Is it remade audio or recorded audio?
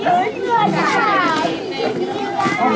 recorded